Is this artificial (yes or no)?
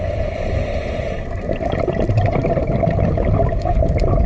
no